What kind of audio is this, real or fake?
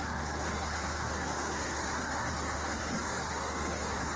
fake